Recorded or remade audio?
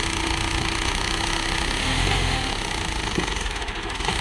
remade